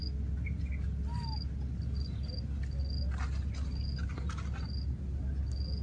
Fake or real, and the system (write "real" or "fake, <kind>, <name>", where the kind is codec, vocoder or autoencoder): real